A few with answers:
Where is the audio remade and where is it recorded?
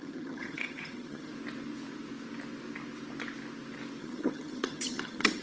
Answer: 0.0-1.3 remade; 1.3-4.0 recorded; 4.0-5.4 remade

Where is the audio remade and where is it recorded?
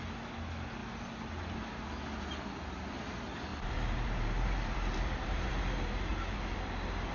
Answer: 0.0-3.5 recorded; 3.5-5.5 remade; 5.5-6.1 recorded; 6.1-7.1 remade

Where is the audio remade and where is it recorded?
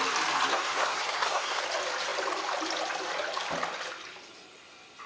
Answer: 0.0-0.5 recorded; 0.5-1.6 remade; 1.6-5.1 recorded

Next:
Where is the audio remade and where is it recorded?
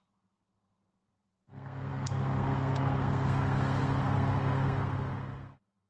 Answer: 0.0-5.9 remade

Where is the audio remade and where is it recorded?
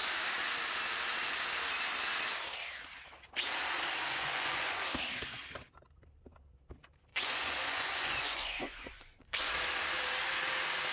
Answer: 0.0-4.1 recorded; 4.1-4.8 remade; 4.8-7.1 recorded; 7.1-9.5 remade; 9.5-10.9 recorded